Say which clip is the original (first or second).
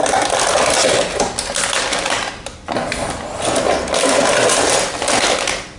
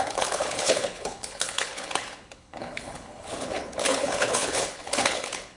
first